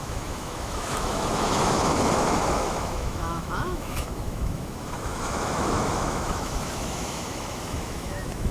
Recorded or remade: remade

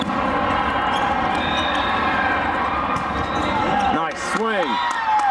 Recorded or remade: recorded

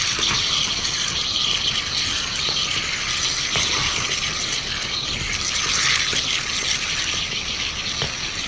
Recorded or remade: recorded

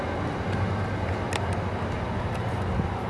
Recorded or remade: recorded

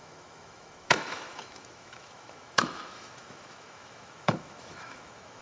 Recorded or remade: remade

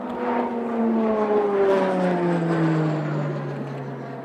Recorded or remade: recorded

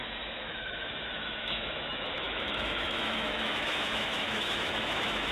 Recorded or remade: remade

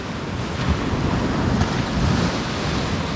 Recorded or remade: recorded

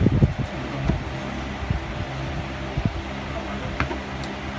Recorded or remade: recorded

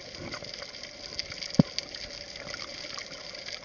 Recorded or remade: recorded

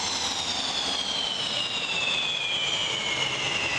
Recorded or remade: recorded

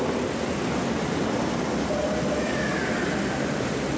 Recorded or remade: recorded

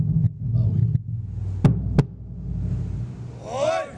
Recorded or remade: recorded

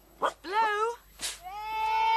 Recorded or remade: recorded